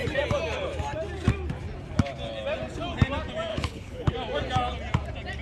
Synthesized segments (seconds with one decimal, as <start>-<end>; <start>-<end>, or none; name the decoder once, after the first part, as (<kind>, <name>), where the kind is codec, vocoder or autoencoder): 3.5-4.1 (codec, HILCodec)